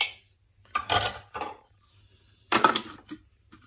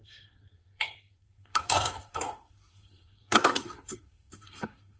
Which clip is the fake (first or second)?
second